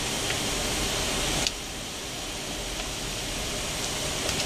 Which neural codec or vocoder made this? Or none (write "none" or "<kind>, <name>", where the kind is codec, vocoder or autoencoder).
vocoder, BigVGAN v2